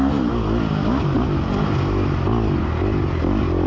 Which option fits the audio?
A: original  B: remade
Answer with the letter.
A